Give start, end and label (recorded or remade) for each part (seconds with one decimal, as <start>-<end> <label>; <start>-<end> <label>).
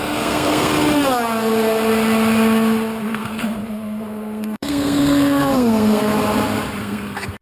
0.0-0.7 remade; 0.7-3.0 recorded; 3.0-6.1 remade; 6.1-6.8 recorded; 6.8-7.4 remade